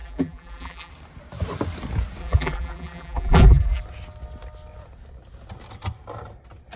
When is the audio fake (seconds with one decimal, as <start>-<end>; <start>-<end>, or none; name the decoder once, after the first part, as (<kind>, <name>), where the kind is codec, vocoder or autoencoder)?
0.0-0.9 (vocoder, BigVGAN v2); 2.2-3.8